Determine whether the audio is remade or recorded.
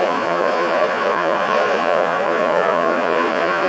remade